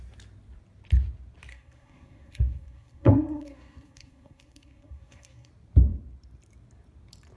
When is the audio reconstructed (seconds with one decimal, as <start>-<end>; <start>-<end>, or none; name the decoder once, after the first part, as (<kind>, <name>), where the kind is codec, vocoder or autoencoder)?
1.5-5.5 (codec, SNAC)